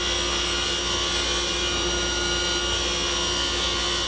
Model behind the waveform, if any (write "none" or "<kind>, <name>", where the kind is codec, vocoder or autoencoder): none